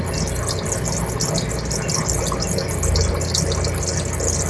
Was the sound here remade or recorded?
recorded